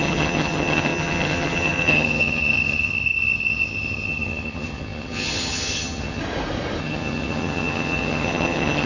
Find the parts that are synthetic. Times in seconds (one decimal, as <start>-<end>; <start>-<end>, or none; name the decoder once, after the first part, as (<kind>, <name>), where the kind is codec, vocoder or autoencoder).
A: 0.0-6.2 (vocoder, HiFi-GAN); 6.8-8.9